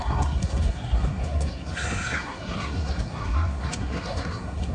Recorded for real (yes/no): no